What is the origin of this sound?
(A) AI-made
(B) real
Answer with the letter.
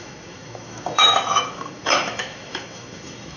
A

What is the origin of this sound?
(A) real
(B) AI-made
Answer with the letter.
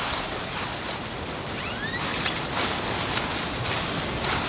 A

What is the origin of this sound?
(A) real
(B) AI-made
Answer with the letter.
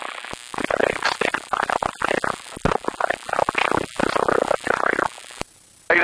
A